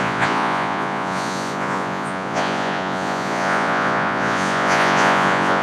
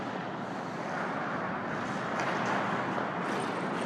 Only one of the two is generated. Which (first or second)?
first